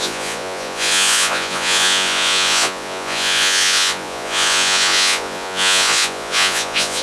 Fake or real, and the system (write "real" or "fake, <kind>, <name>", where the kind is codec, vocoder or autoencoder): fake, vocoder, Vocos